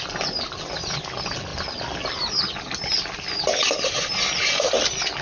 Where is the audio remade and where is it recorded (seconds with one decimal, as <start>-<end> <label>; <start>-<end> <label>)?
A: 0.0-5.2 recorded